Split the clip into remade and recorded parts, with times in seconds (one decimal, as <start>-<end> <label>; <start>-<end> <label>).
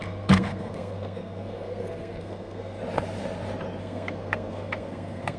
0.0-2.8 remade; 2.8-3.8 recorded; 3.8-5.4 remade